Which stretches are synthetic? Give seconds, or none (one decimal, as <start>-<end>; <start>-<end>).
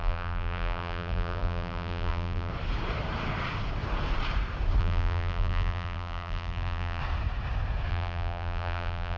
0.0-2.5; 4.8-7.0; 7.9-9.2